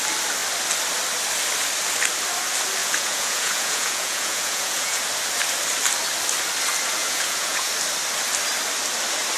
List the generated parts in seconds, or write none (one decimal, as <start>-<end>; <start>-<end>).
2.8-5.0; 7.0-7.7